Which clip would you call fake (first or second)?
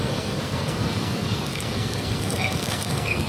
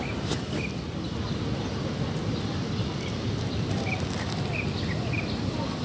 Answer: first